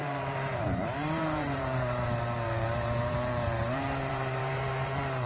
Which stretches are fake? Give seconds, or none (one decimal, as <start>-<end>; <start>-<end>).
0.0-5.3